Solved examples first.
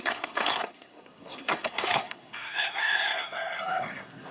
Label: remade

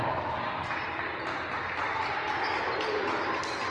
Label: recorded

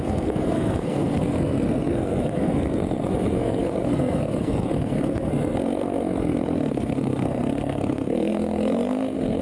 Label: remade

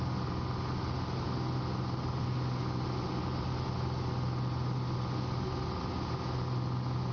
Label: recorded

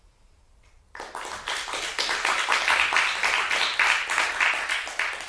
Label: recorded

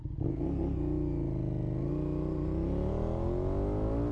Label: recorded